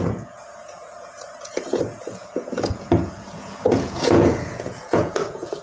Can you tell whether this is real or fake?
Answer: fake